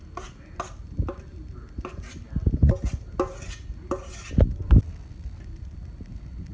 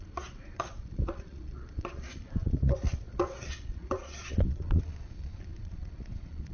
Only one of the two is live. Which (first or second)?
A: first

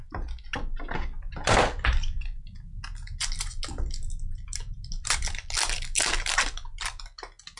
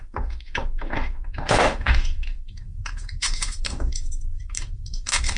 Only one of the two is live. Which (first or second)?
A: first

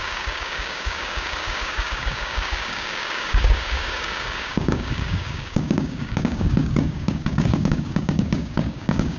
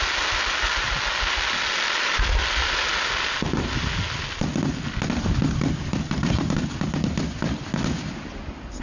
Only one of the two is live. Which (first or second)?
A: second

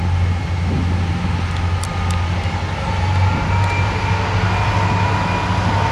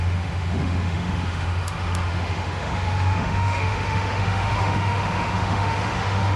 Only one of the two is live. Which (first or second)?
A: first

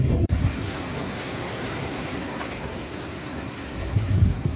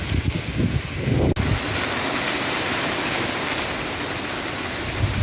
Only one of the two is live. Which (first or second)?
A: second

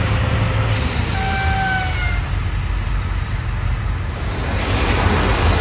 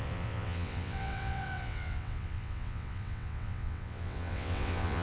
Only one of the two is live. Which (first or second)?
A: first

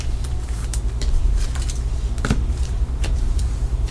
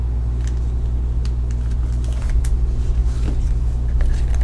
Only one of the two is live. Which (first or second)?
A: second